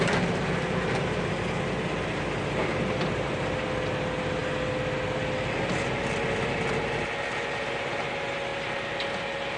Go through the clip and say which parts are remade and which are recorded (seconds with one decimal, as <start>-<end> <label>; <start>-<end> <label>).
0.0-4.4 recorded; 4.4-5.2 remade; 5.2-9.6 recorded